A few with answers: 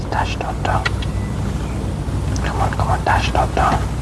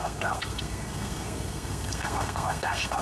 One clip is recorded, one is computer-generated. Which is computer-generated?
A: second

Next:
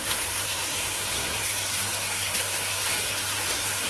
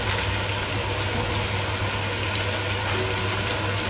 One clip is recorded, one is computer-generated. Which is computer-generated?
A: first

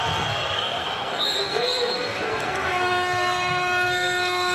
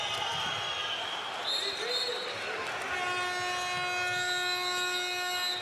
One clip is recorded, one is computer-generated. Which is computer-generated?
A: first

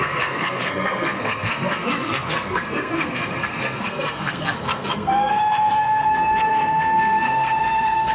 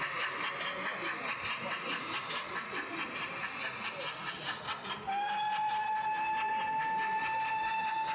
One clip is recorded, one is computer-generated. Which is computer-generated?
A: first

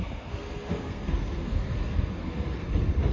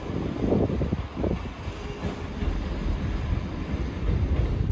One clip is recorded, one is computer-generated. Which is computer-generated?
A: first